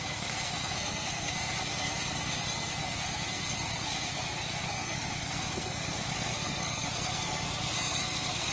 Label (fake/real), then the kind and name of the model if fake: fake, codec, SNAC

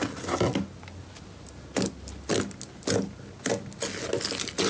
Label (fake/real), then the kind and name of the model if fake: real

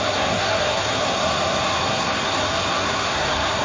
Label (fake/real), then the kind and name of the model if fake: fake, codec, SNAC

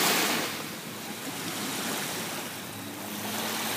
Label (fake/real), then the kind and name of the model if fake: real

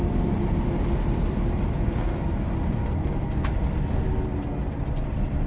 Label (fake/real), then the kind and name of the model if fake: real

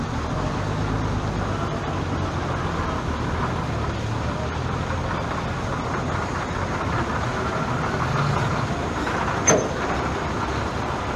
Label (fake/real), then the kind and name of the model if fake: real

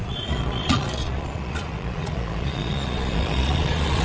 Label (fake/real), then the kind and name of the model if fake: fake, vocoder, Vocos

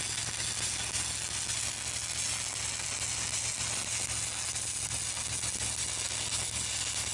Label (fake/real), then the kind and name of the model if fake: real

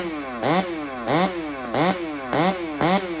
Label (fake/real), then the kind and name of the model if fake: real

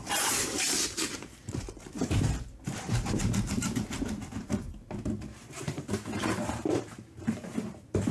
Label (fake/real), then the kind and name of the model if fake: fake, vocoder, BigVGAN v2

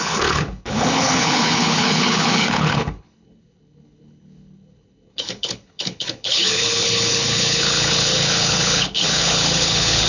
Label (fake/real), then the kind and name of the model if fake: fake, codec, HILCodec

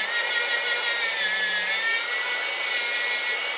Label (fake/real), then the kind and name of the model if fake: real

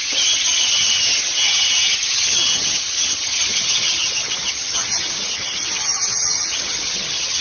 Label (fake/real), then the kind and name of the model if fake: fake, vocoder, HiFi-GAN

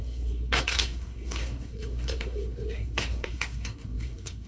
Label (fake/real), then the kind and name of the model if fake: fake, codec, SNAC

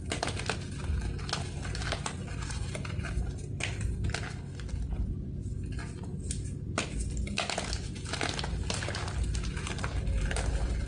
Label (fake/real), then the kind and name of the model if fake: real